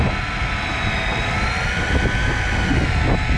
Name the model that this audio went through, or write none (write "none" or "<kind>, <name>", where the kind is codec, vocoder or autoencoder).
none